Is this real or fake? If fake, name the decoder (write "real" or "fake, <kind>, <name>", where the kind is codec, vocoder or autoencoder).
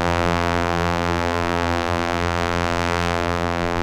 fake, vocoder, BigVGAN v2